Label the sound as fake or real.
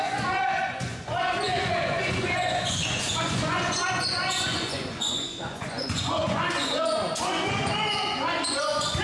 fake